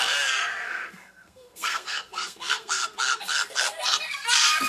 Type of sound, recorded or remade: remade